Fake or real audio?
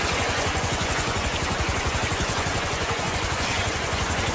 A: fake